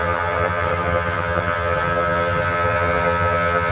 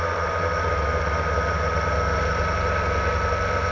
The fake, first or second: first